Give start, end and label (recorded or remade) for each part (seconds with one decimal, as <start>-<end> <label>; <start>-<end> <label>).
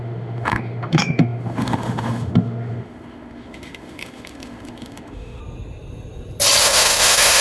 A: 0.0-5.4 remade; 5.4-6.6 recorded; 6.6-7.4 remade